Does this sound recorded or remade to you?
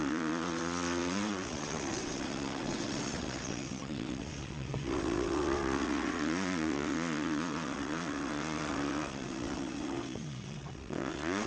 remade